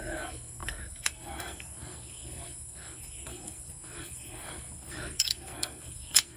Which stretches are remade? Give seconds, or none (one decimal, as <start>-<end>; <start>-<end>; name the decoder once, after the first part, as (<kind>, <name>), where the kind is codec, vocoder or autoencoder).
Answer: 0.0-6.4 (codec, SNAC)

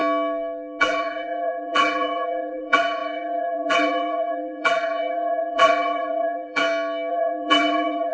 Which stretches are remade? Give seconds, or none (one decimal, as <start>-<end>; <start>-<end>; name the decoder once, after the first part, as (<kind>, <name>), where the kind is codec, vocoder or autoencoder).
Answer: 0.8-6.6 (vocoder, BigVGAN v2); 7.1-8.1

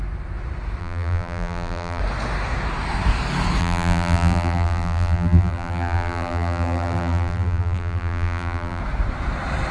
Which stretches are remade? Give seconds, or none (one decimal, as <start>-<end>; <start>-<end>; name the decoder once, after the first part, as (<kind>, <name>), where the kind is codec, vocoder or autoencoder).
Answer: 0.8-2.0 (vocoder, BigVGAN v2); 3.6-8.8